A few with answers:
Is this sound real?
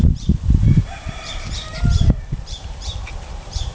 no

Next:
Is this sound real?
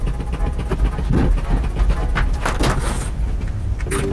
yes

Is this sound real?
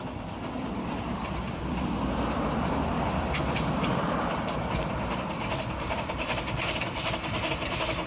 no